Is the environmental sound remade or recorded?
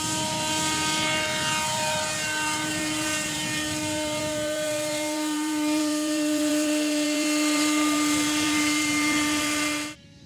remade